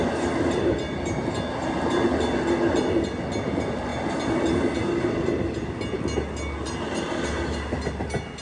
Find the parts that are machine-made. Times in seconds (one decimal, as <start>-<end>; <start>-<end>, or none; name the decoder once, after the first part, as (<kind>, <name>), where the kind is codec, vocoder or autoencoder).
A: none